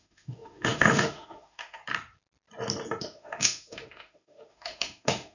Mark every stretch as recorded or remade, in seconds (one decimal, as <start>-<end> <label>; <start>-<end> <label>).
0.0-1.8 remade; 1.8-3.0 recorded; 3.0-5.3 remade